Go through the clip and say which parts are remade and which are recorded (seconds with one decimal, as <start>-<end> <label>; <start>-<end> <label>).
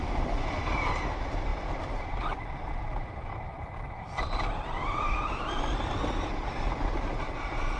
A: 0.0-7.8 recorded